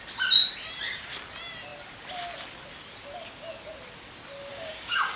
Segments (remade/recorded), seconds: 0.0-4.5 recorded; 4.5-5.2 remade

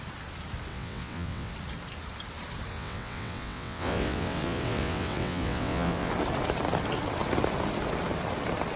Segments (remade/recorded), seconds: 0.0-0.7 recorded; 0.7-1.5 remade; 1.5-2.7 recorded; 2.7-6.1 remade; 6.1-8.8 recorded

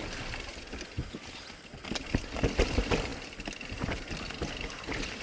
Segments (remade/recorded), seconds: 0.0-5.2 recorded